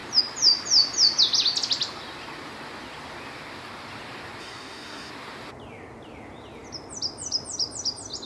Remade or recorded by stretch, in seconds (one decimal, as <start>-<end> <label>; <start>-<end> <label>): 0.0-4.4 recorded; 4.4-5.1 remade; 5.1-8.3 recorded